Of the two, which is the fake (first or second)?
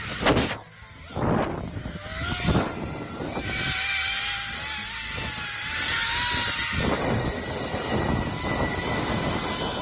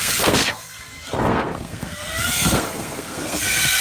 second